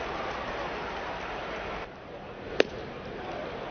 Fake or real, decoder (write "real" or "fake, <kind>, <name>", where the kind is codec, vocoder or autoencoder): real